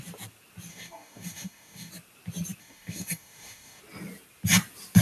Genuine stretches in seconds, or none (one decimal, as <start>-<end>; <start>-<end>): 0.0-0.7; 1.9-2.6; 3.8-5.0